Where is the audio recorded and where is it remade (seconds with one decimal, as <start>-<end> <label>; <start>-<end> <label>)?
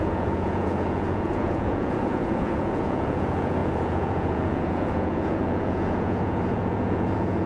0.0-7.5 remade